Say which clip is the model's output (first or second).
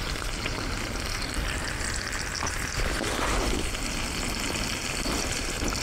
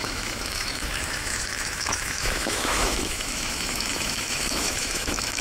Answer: second